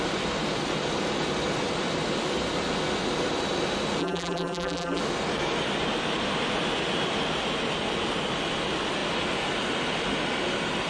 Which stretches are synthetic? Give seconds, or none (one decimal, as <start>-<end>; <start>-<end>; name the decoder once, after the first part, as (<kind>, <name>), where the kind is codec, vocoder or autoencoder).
4.0-5.0 (vocoder, BigVGAN v2)